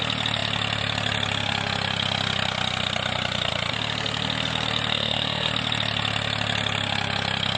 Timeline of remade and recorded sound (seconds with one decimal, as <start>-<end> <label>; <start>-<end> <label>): 0.0-4.9 recorded; 4.9-5.5 remade; 5.5-7.6 recorded